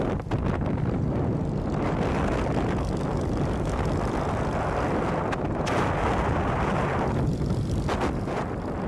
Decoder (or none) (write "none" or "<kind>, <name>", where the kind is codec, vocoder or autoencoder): none